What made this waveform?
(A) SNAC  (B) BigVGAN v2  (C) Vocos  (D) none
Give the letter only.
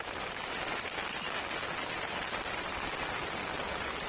D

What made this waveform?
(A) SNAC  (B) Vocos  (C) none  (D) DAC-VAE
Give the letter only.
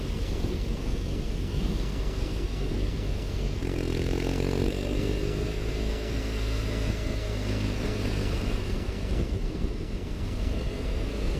A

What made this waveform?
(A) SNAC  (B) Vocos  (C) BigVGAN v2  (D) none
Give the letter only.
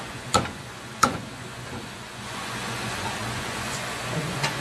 B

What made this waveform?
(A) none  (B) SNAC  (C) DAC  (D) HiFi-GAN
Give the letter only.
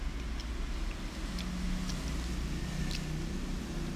A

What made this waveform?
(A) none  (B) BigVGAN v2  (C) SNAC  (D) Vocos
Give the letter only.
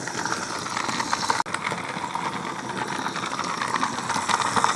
A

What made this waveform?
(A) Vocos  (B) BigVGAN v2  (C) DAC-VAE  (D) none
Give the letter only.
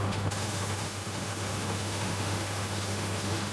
C